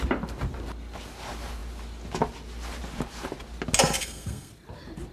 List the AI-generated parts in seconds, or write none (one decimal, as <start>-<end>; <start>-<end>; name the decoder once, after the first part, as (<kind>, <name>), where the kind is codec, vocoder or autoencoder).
4.0-4.5 (codec, SNAC)